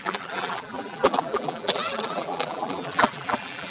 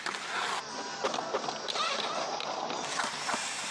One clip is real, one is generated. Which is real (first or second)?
second